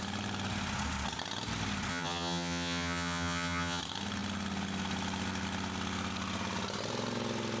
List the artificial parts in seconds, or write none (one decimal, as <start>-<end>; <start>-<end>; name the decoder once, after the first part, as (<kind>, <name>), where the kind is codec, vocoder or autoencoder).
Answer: 1.9-3.8 (vocoder, HiFi-GAN)